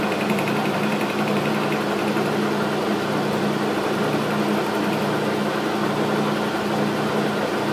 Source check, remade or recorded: recorded